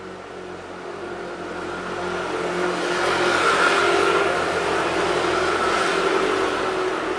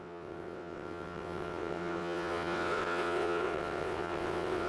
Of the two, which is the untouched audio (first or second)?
first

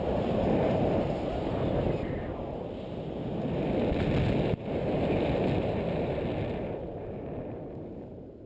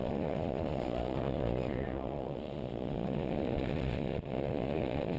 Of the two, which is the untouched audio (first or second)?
first